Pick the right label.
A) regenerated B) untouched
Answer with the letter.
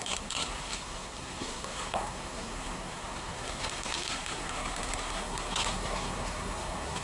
A